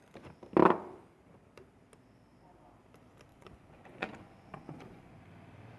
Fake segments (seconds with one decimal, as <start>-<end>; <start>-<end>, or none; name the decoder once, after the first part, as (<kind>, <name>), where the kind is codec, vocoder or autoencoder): 3.3-5.1 (vocoder, Vocos)